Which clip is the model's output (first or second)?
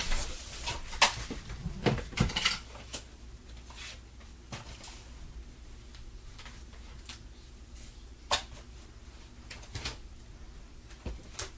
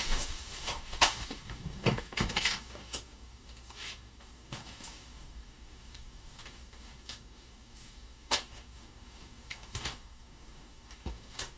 second